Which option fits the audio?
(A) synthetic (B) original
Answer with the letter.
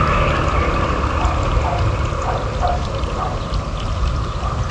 B